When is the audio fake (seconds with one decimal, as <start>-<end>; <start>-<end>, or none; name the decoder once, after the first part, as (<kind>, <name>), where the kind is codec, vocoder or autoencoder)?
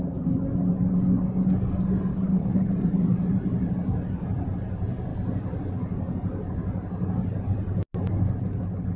2.1-2.7 (codec, HILCodec)